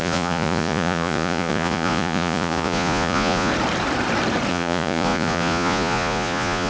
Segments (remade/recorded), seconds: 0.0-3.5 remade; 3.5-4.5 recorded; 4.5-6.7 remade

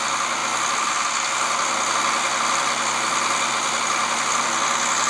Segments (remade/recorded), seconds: 0.0-5.1 recorded